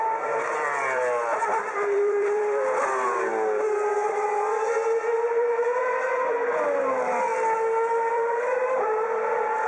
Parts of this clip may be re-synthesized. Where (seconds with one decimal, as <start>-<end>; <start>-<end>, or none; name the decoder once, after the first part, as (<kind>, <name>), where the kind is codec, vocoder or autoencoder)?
0.0-7.3 (vocoder, BigVGAN v2); 8.1-9.7